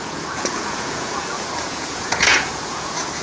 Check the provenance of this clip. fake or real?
fake